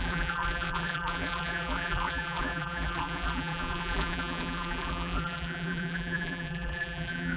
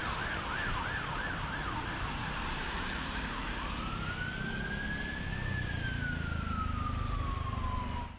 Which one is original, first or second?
second